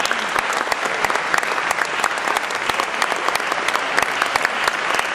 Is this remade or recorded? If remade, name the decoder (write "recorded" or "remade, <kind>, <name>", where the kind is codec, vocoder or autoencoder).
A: recorded